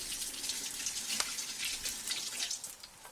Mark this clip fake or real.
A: real